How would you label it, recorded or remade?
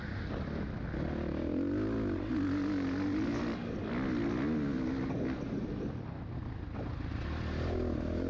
recorded